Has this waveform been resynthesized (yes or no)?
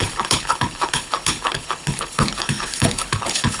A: yes